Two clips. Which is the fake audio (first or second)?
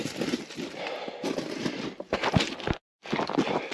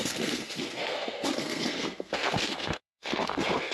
second